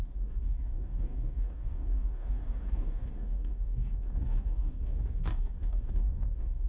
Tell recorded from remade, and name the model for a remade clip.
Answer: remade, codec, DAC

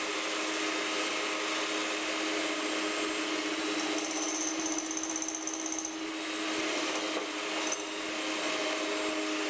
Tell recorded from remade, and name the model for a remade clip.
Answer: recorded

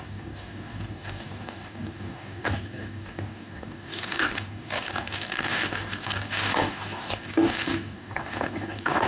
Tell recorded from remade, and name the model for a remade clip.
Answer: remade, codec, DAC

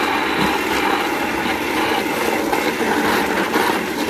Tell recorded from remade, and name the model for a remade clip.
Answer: recorded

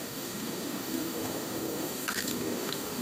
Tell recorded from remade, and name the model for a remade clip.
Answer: remade, codec, DAC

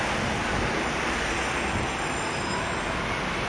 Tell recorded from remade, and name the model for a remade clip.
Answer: recorded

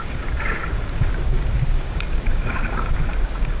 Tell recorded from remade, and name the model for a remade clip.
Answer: remade, codec, DAC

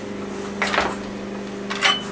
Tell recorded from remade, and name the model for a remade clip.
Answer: recorded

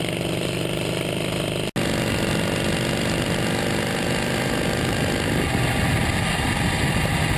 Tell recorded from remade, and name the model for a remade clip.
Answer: recorded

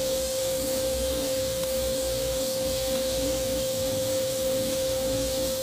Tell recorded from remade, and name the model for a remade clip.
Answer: remade, codec, DAC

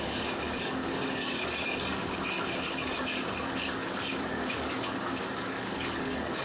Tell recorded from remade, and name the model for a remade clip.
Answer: remade, codec, DAC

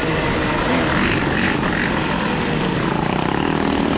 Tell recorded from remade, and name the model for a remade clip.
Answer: recorded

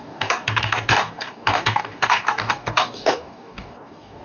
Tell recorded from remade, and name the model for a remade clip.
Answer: remade, codec, DAC